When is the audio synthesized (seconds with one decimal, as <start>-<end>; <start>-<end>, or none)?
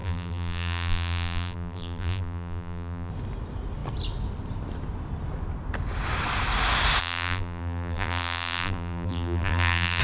0.0-3.1; 7.0-10.0